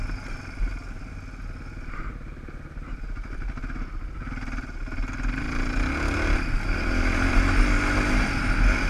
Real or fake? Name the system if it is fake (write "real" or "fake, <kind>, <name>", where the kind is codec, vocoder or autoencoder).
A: real